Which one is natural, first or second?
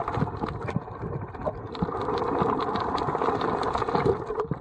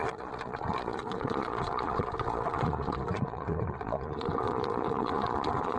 first